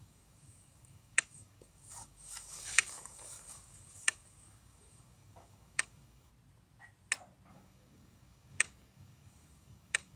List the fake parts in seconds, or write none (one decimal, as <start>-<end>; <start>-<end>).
0.0-6.3; 7.5-10.2